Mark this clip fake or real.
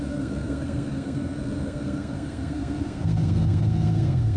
fake